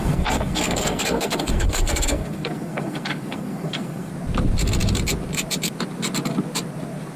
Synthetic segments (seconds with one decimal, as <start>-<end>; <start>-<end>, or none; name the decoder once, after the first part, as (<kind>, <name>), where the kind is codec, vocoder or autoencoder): 0.0-4.1 (codec, SNAC)